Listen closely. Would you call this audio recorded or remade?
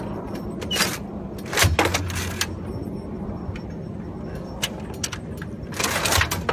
recorded